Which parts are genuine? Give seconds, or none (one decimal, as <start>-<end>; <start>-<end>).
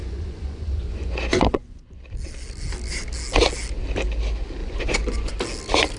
2.0-4.6; 5.3-6.0